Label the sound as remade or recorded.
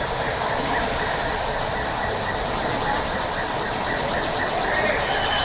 recorded